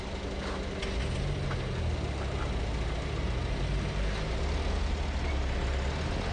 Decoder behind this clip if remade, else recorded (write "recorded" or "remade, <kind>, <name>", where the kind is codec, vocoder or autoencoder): recorded